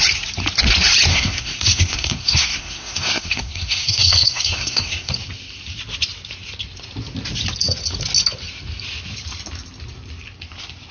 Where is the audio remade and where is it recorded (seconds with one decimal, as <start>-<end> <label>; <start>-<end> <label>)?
0.0-1.1 recorded; 1.1-5.1 remade; 5.1-10.9 recorded